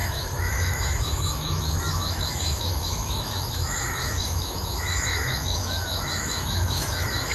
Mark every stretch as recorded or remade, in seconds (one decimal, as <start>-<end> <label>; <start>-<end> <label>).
0.0-7.3 remade